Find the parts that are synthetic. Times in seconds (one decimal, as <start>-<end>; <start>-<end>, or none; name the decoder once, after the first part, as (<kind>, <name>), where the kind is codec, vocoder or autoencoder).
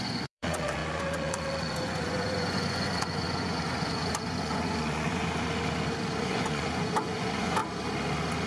0.0-5.2 (vocoder, Vocos); 6.2-7.6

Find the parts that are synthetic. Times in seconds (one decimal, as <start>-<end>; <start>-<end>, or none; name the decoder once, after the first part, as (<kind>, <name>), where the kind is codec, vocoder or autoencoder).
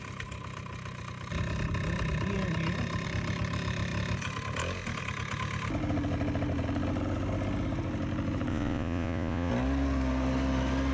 8.5-9.5 (vocoder, Vocos)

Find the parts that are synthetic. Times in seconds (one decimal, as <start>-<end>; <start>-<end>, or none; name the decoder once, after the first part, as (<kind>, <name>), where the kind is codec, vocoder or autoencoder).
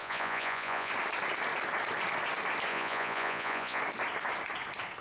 0.0-0.9 (vocoder, Vocos); 2.7-3.8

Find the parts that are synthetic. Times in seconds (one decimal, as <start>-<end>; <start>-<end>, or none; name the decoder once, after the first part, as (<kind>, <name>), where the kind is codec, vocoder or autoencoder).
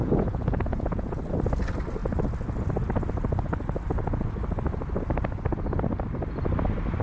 0.0-1.2 (vocoder, Vocos)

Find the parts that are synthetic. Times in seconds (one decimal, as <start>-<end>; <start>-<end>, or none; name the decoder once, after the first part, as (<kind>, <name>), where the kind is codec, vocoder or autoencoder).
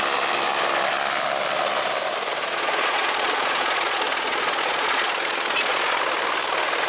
2.4-6.0 (vocoder, Vocos)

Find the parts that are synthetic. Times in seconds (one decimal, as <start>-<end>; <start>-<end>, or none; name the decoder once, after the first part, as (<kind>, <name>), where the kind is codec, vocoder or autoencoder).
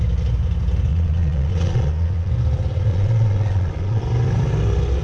0.9-2.3 (vocoder, Vocos); 2.9-4.0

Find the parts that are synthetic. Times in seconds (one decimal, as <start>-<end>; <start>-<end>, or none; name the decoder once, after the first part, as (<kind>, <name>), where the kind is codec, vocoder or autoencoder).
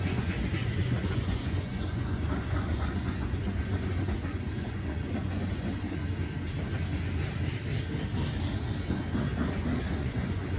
0.0-6.0 (vocoder, Vocos); 8.8-10.6